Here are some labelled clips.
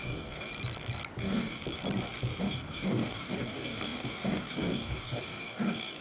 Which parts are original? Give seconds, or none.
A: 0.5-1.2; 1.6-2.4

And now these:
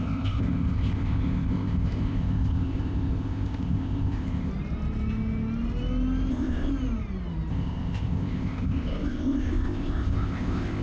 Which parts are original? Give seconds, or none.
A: 4.5-6.3; 6.7-7.5

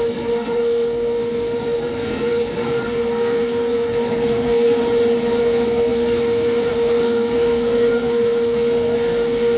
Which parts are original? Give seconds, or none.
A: 4.8-5.4

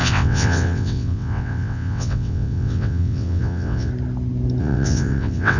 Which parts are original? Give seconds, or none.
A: 3.9-4.6

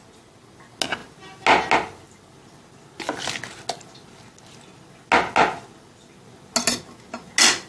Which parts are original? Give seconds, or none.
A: 0.0-7.7